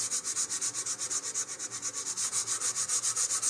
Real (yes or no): yes